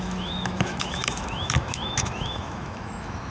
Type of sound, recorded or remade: remade